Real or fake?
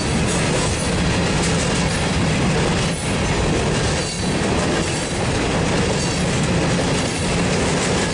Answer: real